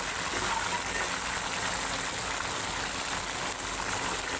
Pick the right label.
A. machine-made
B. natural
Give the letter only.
B